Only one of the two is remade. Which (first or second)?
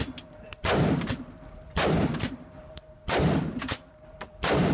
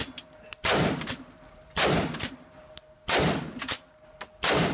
first